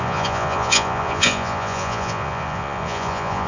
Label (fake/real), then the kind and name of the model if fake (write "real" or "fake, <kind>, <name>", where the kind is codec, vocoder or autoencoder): fake, vocoder, Vocos